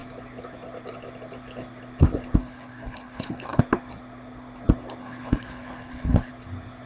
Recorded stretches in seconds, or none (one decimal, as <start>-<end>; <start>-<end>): 0.0-2.4; 3.6-5.0; 6.3-6.9